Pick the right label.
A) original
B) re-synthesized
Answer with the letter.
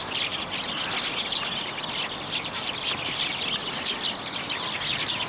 A